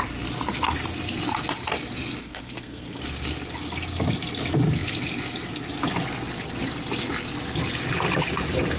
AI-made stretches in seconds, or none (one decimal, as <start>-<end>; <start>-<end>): 2.2-3.0